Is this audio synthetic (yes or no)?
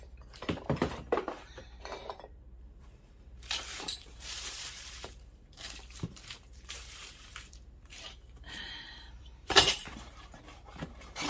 yes